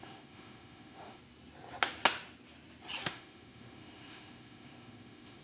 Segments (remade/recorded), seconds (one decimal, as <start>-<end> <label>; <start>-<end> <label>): 0.0-1.2 remade; 1.2-3.1 recorded; 3.1-5.4 remade